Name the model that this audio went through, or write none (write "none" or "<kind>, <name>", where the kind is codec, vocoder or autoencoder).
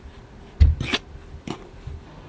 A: none